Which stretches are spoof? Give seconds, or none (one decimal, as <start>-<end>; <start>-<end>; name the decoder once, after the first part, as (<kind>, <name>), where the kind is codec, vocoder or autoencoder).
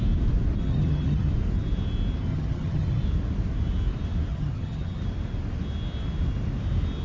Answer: 0.6-1.3 (vocoder, HiFi-GAN); 2.3-3.0; 4.3-5.0